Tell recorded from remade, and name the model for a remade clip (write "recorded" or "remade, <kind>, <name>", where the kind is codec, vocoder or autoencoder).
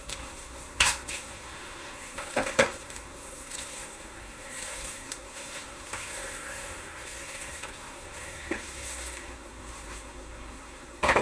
remade, codec, SNAC